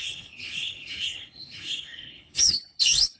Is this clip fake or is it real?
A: fake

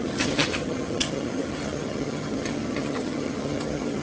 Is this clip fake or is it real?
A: fake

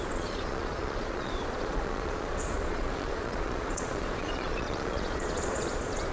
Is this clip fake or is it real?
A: fake